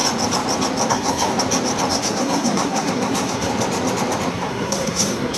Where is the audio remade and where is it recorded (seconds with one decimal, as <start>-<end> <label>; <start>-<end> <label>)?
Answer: 0.0-0.9 recorded; 0.9-1.3 remade; 1.3-1.9 recorded; 1.9-3.5 remade; 3.5-4.3 recorded; 4.3-5.4 remade